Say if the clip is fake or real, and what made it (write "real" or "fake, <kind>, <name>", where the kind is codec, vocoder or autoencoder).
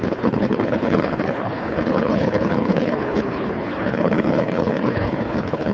fake, codec, HILCodec